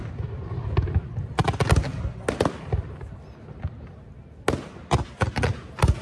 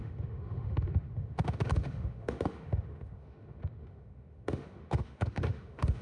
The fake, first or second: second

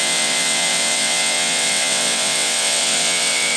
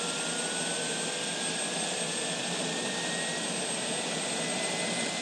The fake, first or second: first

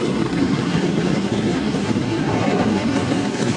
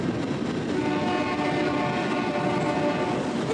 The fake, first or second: first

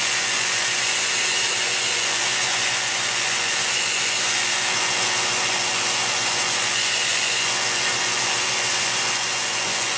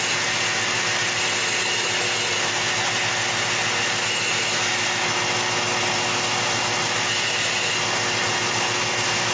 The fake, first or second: first